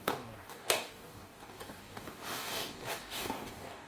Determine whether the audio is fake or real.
fake